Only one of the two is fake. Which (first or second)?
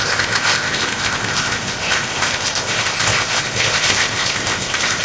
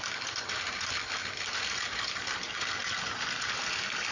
first